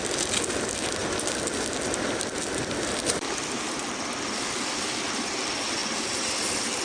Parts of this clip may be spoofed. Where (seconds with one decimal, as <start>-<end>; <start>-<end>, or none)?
1.0-4.0